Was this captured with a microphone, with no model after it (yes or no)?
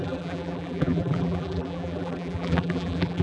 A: no